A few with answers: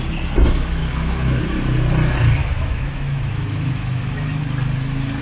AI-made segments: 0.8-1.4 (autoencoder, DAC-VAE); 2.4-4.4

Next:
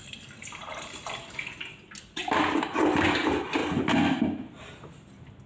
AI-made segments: none

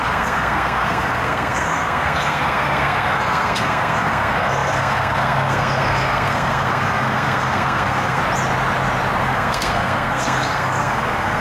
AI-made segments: 0.0-8.2 (codec, SNAC); 9.2-11.4

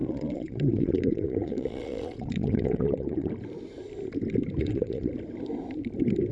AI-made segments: 0.0-3.3 (vocoder, Vocos); 4.6-5.1

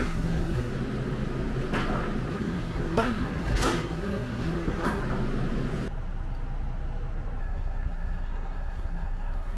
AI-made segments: 0.0-0.7 (codec, SNAC); 2.3-5.0; 7.4-9.6

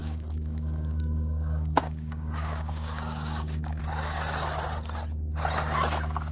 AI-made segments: 0.0-3.8 (codec, DAC)